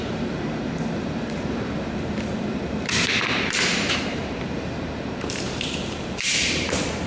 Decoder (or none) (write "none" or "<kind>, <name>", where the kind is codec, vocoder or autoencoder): vocoder, BigVGAN v2